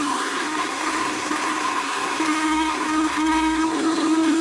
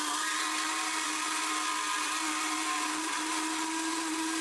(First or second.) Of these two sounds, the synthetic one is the first